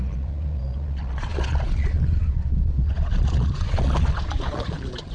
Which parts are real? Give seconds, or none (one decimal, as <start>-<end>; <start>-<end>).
none